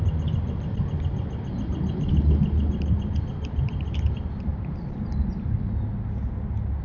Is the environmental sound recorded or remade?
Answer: recorded